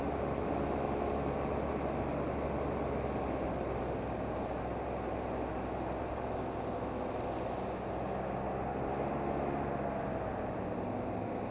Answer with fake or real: real